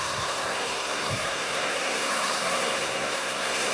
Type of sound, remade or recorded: remade